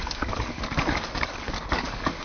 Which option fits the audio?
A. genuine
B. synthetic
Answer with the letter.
B